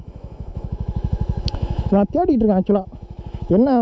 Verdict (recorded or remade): remade